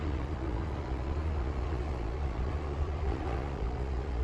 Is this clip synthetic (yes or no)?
yes